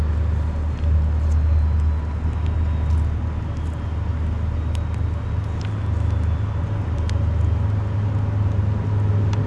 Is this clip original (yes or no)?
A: yes